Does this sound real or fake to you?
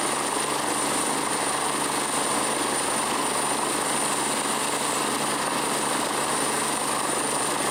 real